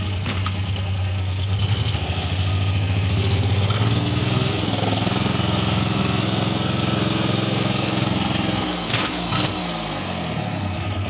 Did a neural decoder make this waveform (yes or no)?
yes